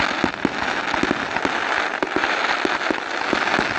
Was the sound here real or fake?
real